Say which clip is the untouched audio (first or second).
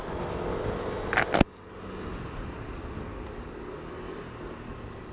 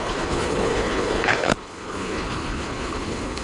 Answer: first